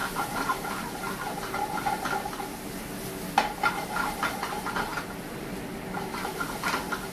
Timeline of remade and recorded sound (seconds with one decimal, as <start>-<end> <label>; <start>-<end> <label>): 0.0-7.1 recorded